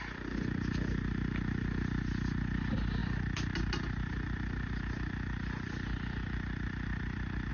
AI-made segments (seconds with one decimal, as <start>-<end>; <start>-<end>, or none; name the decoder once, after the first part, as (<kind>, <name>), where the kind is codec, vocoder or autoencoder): none

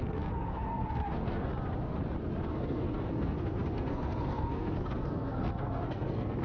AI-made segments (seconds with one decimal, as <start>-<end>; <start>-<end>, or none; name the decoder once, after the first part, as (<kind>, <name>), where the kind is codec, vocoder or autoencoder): 0.0-1.5 (codec, SNAC); 2.5-6.4

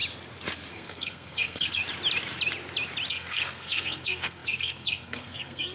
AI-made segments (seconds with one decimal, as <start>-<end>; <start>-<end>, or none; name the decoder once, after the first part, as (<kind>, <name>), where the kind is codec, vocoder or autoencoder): 0.7-1.8 (codec, SNAC); 3.1-5.7

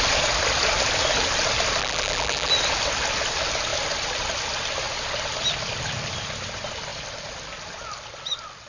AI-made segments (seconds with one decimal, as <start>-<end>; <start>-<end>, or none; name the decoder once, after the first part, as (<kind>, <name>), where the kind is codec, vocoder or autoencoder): 1.8-2.5 (vocoder, BigVGAN v2)